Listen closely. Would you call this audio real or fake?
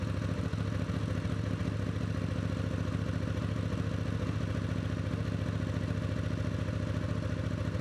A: real